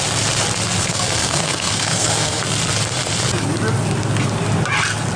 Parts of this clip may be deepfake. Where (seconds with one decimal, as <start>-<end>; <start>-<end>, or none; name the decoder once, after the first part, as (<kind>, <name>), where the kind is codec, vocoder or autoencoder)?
0.8-2.4 (codec, SNAC)